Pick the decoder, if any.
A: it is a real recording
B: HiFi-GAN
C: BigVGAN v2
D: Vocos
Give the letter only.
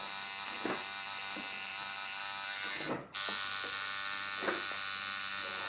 A